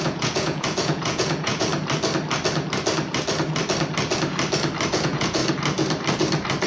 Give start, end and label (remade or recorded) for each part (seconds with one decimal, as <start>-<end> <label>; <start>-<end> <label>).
0.0-1.7 remade; 1.7-4.9 recorded; 4.9-5.4 remade; 5.4-6.7 recorded